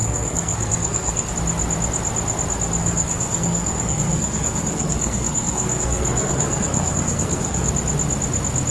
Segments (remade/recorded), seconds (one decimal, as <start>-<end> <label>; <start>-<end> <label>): 0.0-1.3 remade; 1.3-2.8 recorded; 2.8-7.7 remade; 7.7-8.7 recorded